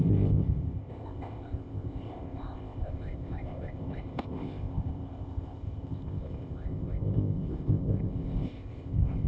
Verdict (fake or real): fake